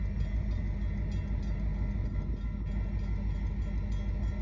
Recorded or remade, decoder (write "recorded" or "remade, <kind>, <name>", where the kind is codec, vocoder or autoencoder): recorded